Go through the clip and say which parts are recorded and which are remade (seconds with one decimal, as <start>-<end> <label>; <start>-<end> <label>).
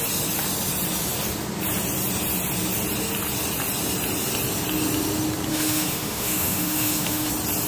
0.0-5.5 recorded; 5.5-7.3 remade; 7.3-7.7 recorded